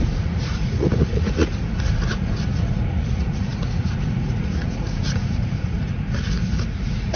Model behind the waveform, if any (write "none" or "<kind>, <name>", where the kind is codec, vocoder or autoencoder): vocoder, Vocos